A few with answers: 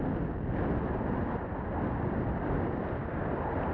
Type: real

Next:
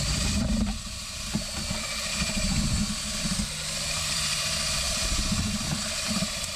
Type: fake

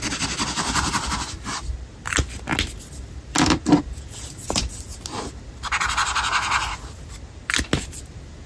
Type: real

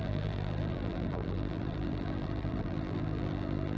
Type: fake